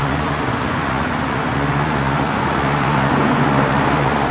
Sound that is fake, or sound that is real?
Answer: fake